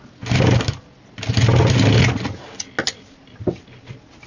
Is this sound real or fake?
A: real